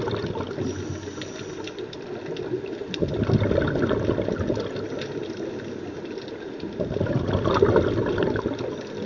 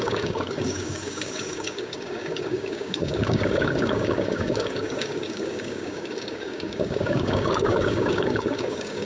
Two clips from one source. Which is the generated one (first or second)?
second